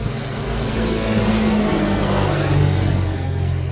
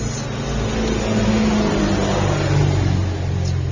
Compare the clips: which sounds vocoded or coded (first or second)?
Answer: first